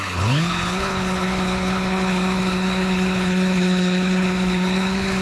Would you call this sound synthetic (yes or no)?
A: yes